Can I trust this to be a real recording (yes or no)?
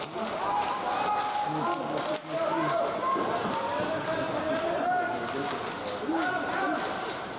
yes